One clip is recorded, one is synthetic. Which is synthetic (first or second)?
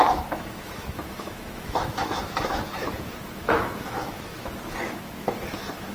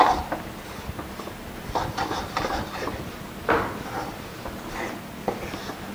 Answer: first